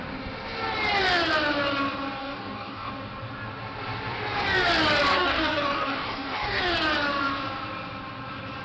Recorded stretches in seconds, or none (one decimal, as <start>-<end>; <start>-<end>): 0.0-2.2; 2.9-5.1; 6.6-8.6